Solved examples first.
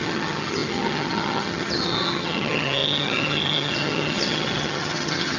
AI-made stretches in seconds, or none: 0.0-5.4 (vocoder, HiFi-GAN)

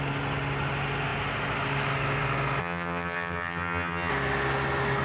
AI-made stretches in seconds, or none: 2.6-4.1 (vocoder, HiFi-GAN)

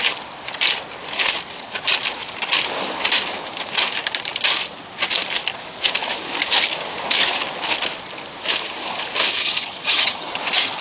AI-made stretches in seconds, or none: 9.4-10.3 (vocoder, HiFi-GAN)

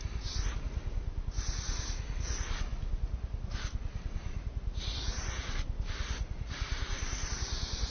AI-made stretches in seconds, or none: none

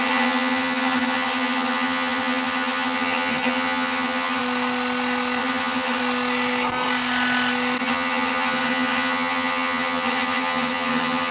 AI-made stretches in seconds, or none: 0.0-4.4 (vocoder, HiFi-GAN); 5.4-6.0; 7.8-11.3